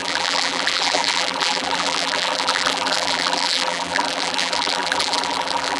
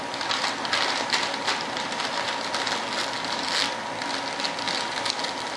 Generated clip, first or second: first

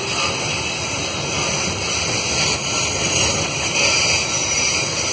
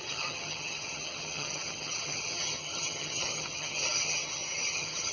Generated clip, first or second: second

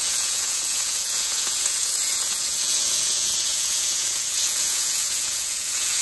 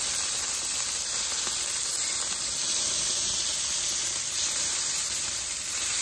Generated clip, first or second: first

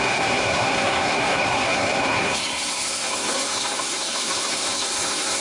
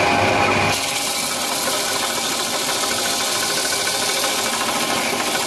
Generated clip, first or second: first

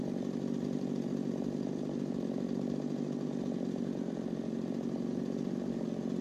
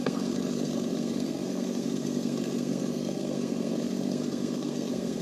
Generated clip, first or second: second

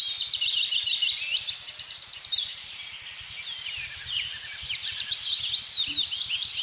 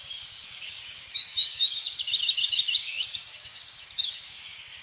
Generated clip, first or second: second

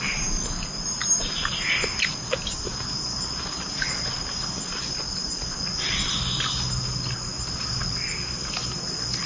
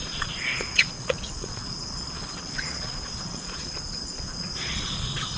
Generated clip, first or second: second